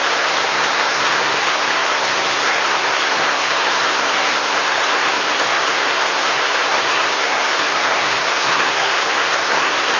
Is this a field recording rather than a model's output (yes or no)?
no